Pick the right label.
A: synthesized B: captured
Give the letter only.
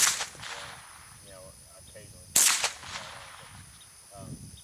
B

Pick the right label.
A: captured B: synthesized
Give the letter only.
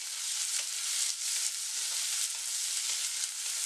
A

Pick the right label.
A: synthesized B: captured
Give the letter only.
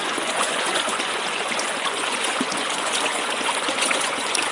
A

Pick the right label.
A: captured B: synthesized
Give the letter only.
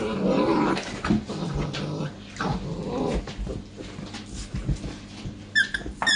A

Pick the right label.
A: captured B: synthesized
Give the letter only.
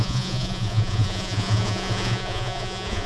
B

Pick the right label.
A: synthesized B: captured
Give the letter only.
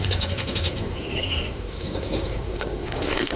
A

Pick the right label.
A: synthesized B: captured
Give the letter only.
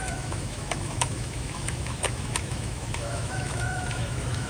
A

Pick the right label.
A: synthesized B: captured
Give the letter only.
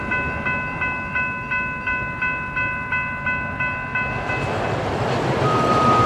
B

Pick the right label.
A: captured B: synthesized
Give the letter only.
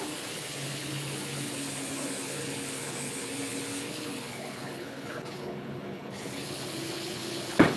B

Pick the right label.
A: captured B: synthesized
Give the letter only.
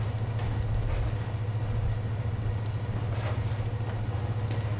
A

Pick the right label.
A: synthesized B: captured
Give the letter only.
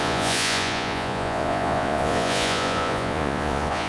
A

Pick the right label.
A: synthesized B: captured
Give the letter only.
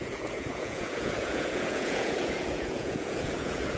A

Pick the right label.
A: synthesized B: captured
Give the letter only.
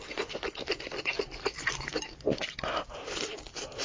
B